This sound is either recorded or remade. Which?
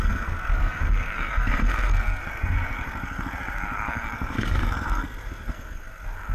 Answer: remade